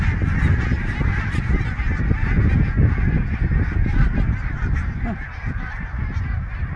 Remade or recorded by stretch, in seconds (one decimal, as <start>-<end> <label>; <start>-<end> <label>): 0.0-2.2 recorded; 2.2-2.9 remade; 2.9-6.8 recorded